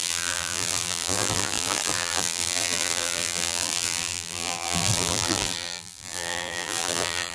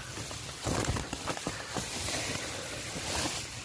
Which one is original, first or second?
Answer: second